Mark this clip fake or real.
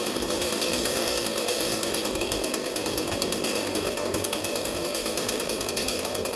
fake